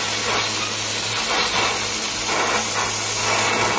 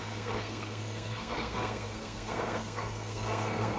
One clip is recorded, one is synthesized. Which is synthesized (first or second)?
second